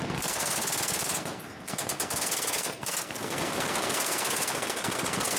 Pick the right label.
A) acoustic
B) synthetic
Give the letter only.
B